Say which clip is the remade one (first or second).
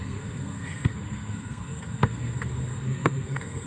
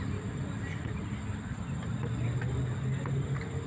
first